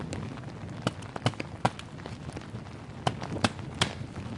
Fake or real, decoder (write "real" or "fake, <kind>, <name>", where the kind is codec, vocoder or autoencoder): real